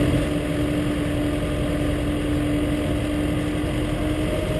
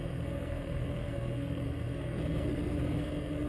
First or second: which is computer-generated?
second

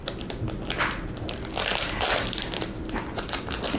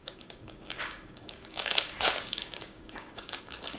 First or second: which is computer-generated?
second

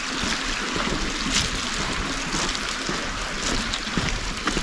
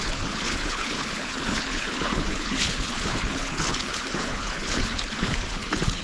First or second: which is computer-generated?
second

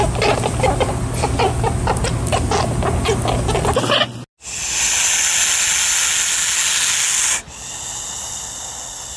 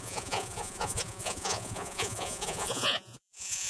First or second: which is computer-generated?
second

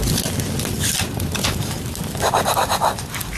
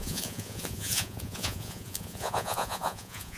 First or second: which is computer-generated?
second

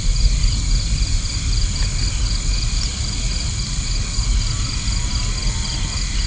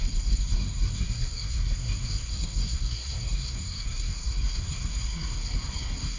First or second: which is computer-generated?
second